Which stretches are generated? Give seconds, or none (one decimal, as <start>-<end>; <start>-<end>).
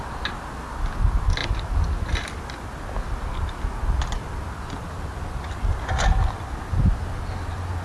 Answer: none